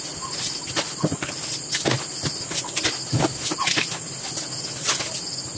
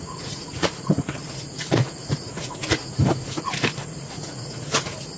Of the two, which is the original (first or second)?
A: first